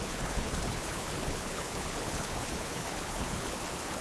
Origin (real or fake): fake